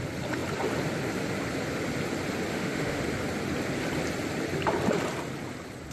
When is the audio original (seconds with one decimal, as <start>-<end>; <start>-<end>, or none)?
0.0-2.5; 3.0-5.9